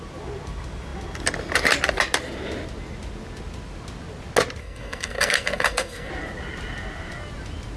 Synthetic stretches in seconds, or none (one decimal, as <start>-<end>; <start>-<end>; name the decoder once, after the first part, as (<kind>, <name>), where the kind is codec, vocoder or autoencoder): 4.6-6.1 (codec, SNAC)